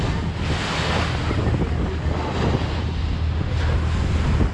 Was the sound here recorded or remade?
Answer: recorded